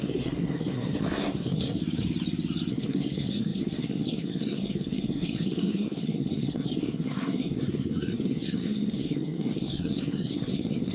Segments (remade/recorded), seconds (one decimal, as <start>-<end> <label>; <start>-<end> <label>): 0.0-1.8 remade; 1.8-2.7 recorded; 2.7-10.9 remade